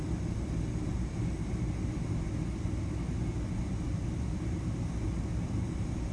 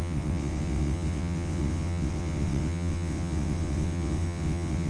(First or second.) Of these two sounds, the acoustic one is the first